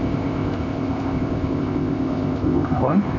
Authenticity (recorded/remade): remade